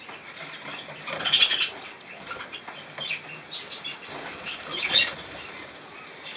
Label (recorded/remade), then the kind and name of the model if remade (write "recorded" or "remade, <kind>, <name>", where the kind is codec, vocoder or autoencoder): recorded